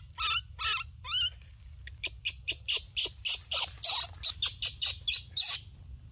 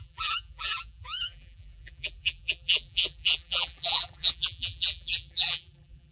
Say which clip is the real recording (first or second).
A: first